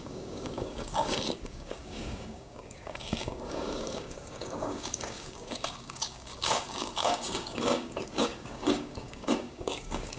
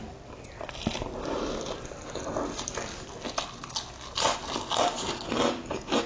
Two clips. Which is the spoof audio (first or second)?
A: first